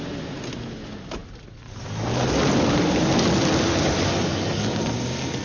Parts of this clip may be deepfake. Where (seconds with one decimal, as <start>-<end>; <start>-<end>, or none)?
none